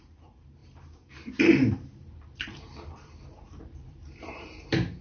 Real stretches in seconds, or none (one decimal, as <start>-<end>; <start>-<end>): none